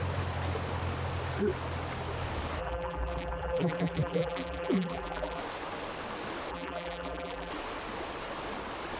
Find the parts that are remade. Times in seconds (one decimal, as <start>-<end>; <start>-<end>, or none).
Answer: 2.6-5.4; 6.5-7.5